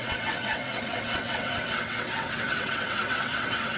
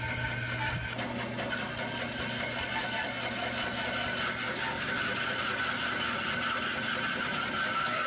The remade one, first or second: first